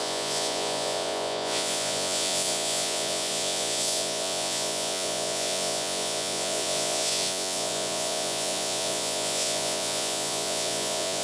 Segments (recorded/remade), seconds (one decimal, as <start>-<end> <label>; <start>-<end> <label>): 0.0-11.2 remade